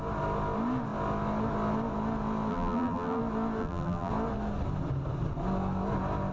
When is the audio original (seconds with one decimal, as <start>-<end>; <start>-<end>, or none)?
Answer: 0.0-2.5; 3.2-3.6; 4.1-6.3

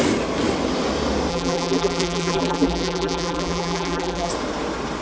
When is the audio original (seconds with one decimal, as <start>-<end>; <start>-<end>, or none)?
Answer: 0.0-1.3; 4.3-5.0